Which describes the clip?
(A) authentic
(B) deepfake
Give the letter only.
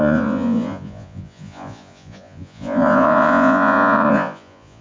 B